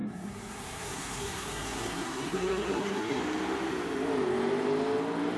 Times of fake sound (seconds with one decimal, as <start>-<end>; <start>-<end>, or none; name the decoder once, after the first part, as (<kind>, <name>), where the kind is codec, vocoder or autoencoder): 0.0-3.2 (codec, SNAC)